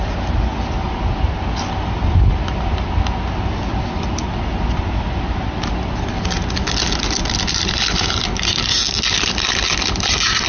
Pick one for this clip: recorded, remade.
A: recorded